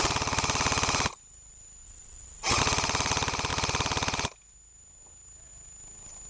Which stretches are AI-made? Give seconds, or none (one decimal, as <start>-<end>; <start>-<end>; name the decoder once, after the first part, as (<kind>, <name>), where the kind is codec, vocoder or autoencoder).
1.8-2.6 (vocoder, Vocos)